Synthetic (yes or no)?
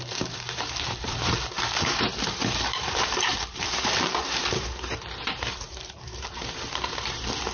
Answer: yes